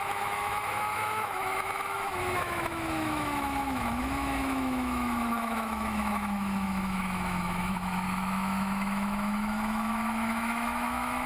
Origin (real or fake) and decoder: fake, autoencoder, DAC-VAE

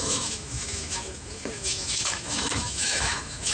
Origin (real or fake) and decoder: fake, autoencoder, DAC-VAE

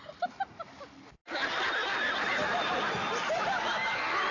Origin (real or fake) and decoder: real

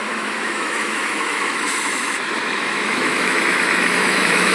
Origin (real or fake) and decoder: fake, autoencoder, DAC-VAE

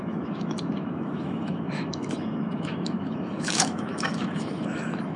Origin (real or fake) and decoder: fake, autoencoder, DAC-VAE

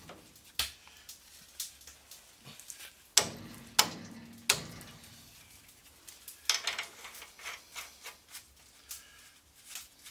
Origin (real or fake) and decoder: real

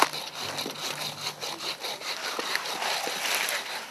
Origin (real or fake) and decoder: real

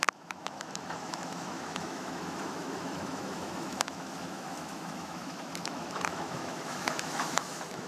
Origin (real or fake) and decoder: fake, autoencoder, DAC-VAE